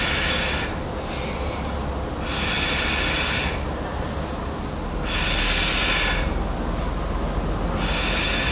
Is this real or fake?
real